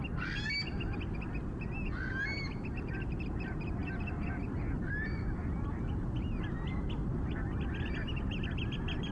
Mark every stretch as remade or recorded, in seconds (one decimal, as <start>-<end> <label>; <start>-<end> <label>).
0.0-9.1 recorded